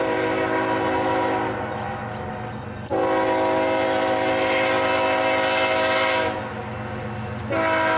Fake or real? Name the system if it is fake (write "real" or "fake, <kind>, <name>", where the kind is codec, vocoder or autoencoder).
real